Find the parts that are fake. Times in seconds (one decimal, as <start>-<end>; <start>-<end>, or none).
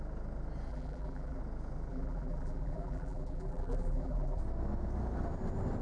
0.7-1.4; 1.9-4.4